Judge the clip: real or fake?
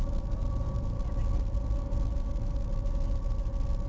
real